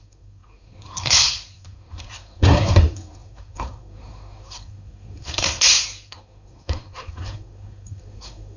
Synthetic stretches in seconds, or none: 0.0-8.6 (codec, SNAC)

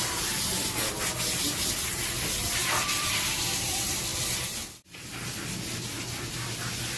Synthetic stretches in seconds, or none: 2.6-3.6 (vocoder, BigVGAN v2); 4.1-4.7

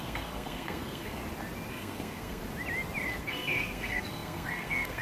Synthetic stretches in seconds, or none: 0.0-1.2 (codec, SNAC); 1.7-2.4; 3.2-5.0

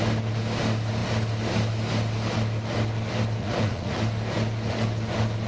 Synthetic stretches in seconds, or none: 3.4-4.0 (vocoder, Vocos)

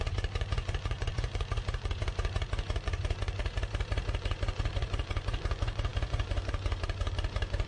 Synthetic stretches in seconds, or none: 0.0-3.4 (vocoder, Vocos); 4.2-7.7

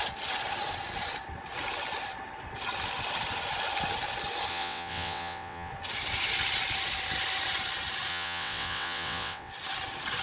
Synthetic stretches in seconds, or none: 4.5-5.7 (vocoder, WaveNeXt); 8.1-9.5

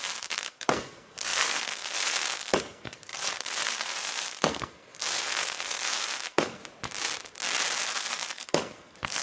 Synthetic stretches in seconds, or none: 0.0-6.6 (codec, SNAC); 7.8-9.2

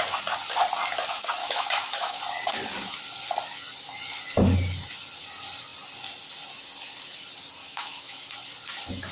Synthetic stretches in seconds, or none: 1.4-2.2 (autoencoder, DAC-VAE); 7.6-8.2